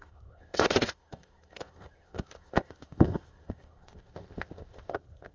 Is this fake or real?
fake